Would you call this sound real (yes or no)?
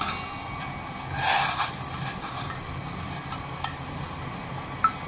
yes